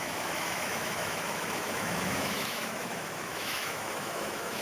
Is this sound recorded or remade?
remade